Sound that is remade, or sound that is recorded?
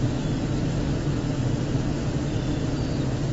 recorded